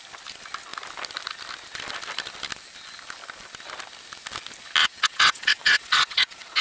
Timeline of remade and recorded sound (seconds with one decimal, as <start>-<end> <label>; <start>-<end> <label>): 0.0-4.8 recorded; 4.8-6.6 remade